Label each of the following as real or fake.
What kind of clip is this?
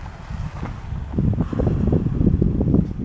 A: real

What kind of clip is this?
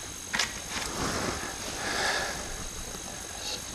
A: real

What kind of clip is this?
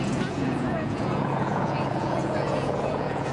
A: fake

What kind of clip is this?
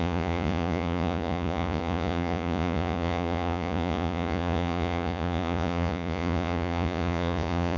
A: fake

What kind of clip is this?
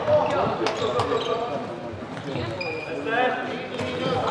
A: real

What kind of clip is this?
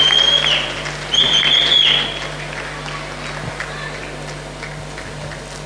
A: real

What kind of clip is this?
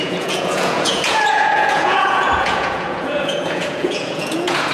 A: fake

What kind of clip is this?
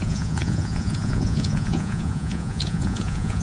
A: fake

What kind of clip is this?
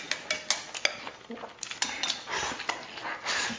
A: real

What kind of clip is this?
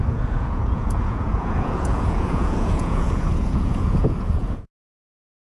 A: fake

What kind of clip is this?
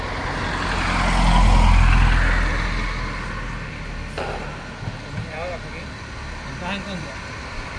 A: real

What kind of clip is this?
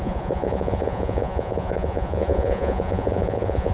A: fake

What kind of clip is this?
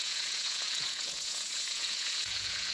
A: fake